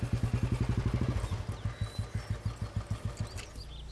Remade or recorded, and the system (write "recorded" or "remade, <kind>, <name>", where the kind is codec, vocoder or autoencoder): recorded